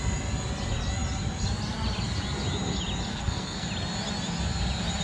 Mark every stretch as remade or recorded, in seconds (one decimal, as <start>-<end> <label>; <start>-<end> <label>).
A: 0.0-3.1 recorded; 3.1-3.7 remade; 3.7-5.0 recorded